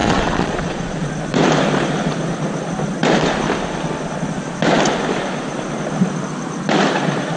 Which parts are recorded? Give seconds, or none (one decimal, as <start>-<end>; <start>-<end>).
1.1-7.4